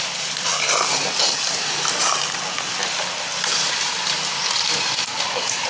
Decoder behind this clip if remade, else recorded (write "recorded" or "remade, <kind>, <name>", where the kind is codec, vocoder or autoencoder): recorded